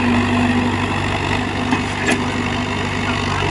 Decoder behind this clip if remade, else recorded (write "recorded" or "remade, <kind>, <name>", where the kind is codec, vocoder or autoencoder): recorded